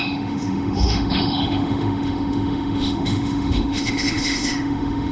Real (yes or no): no